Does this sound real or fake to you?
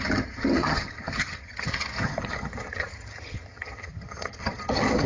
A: fake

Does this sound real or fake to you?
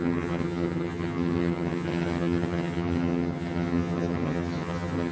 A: fake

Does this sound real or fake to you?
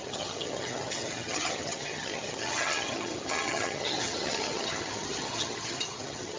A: fake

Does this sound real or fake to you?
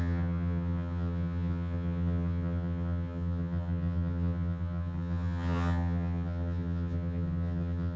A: fake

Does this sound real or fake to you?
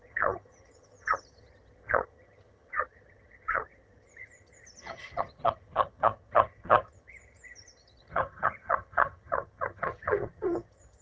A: fake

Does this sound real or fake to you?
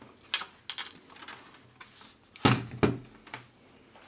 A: real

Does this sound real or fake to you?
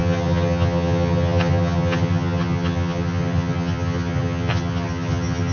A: fake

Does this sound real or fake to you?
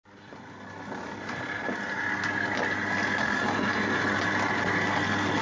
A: real